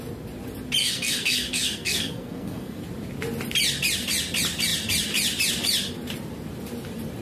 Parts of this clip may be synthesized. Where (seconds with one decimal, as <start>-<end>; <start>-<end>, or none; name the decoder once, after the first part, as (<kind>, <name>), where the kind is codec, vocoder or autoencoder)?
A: 0.8-2.8 (codec, SNAC)